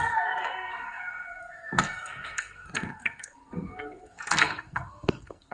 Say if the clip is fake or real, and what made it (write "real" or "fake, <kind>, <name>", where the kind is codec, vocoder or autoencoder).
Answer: fake, codec, SNAC